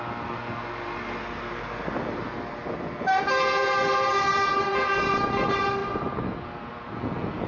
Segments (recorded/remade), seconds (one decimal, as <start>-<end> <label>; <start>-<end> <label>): 0.0-7.5 recorded